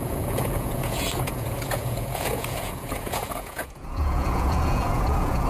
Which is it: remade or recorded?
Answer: remade